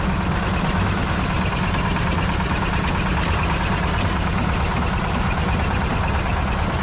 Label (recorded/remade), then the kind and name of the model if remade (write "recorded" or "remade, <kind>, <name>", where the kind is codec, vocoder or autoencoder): recorded